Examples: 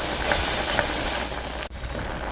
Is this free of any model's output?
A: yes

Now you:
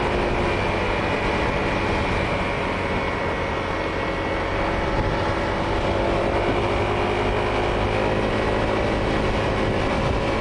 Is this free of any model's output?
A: yes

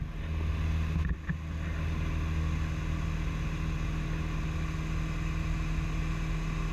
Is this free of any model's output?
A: yes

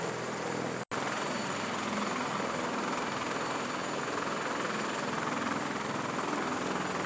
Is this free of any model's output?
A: yes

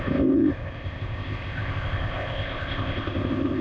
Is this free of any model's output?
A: no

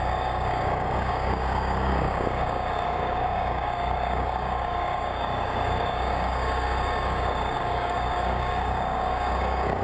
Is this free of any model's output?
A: no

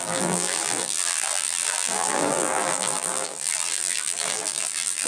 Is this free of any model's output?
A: no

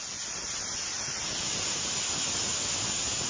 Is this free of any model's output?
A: yes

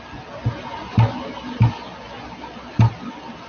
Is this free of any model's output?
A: yes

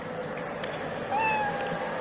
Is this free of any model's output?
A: yes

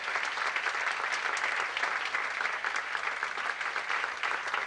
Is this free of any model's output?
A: yes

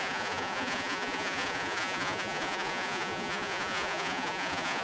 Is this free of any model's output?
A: no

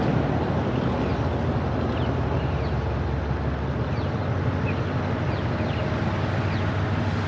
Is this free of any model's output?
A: yes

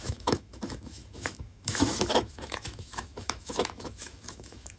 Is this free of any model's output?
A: no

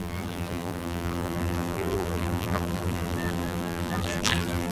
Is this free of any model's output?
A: no